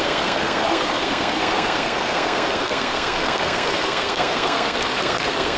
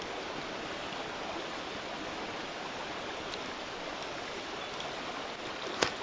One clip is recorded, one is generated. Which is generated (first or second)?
first